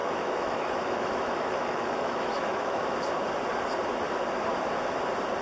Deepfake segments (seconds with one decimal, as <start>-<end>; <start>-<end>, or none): 0.0-2.8